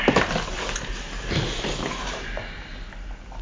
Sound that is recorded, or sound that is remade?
recorded